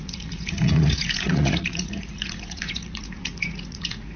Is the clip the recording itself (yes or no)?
no